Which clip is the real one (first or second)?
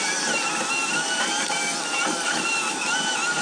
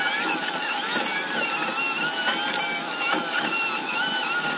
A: second